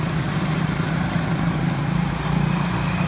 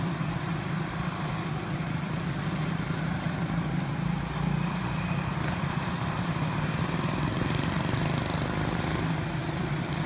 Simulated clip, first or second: second